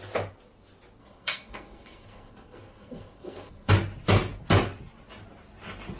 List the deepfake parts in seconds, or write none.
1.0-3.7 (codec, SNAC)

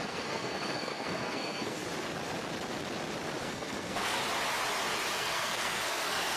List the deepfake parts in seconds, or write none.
0.0-1.8 (codec, SNAC); 3.4-4.2; 5.1-6.4

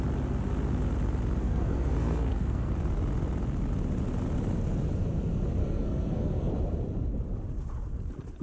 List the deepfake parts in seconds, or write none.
1.4-2.7 (codec, SNAC); 5.6-6.5

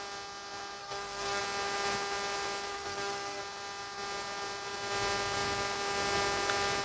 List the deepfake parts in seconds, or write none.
0.8-1.4 (codec, SNAC); 2.7-3.4

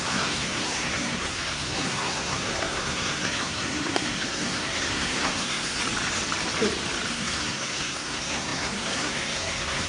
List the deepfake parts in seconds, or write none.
0.0-5.8 (codec, SNAC); 7.1-9.9

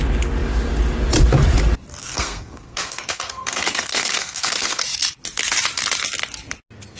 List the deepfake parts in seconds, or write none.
2.0-4.8 (codec, SNAC)

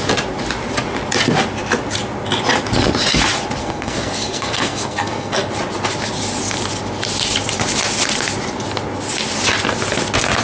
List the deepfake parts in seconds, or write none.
3.6-5.5 (codec, SNAC)

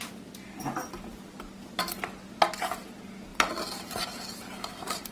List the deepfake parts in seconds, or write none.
none